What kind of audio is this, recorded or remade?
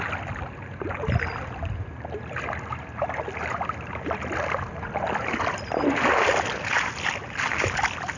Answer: recorded